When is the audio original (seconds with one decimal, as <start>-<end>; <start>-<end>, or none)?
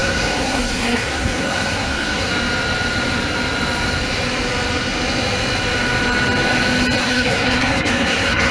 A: 2.3-7.0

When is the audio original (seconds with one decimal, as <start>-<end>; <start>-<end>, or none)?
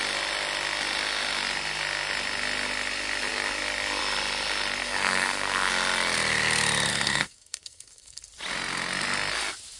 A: 0.0-4.8; 5.7-6.9; 8.2-9.8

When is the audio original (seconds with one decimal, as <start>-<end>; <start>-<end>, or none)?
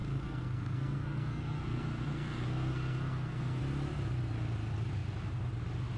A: 3.6-6.0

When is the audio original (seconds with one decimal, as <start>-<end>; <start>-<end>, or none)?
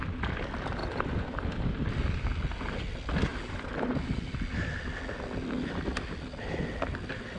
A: 0.0-7.4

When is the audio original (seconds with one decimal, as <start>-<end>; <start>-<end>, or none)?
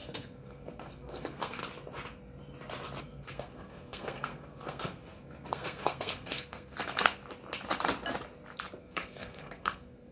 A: 1.6-3.0; 7.2-8.8